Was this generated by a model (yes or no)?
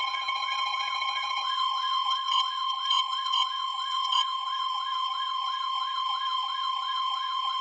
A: yes